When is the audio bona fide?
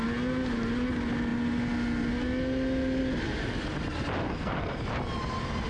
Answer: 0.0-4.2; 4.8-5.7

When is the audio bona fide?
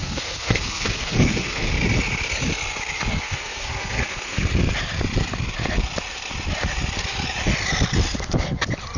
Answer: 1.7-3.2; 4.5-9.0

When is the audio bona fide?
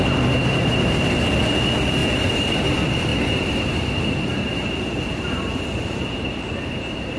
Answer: none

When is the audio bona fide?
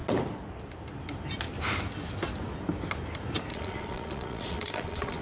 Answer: 0.0-3.5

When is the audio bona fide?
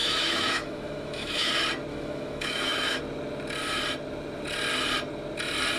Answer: 1.5-1.9; 3.0-5.8